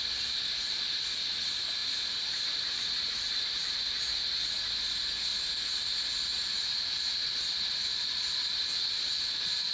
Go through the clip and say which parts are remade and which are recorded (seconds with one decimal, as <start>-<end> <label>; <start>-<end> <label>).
0.0-1.8 recorded; 1.8-3.7 remade; 3.7-9.7 recorded